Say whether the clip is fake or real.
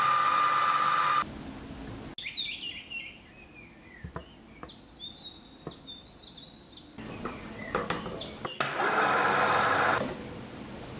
real